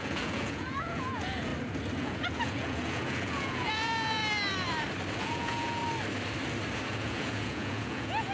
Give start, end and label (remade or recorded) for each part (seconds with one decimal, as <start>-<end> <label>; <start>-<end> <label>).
0.0-1.5 remade; 1.5-2.0 recorded; 2.0-4.2 remade; 4.2-5.2 recorded; 5.2-5.8 remade; 5.8-6.9 recorded; 6.9-8.3 remade